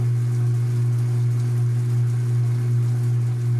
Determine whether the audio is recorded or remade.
recorded